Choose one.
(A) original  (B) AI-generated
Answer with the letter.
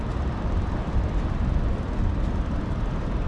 B